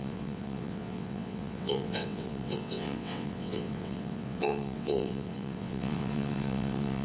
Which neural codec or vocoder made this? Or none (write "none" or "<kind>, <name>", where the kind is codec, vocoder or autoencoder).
vocoder, WaveNeXt